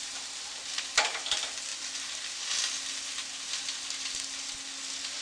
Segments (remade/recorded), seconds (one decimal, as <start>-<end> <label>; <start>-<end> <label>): 0.0-5.2 recorded